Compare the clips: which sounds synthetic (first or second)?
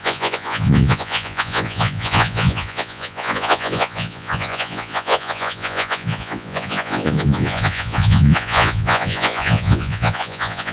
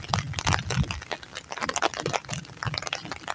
first